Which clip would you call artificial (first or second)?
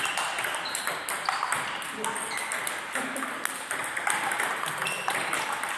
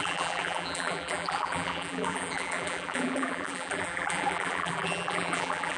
second